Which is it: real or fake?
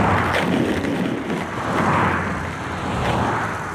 real